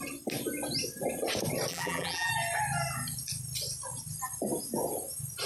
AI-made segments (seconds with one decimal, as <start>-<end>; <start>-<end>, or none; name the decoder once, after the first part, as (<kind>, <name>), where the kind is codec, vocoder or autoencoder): 1.7-2.3 (vocoder, BigVGAN v2)